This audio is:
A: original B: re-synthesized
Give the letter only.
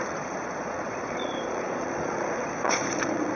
B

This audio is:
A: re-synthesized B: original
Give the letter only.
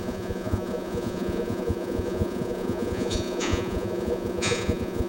A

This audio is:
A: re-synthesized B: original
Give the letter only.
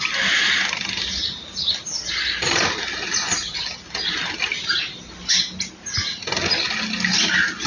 B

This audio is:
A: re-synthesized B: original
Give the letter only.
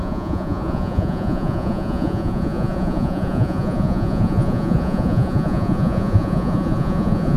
A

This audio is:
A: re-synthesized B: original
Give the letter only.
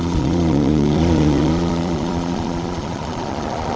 A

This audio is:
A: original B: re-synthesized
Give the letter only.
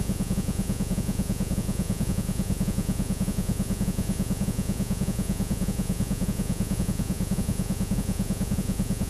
B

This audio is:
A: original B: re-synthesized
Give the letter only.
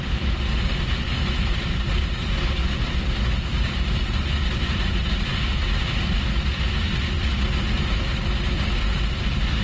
A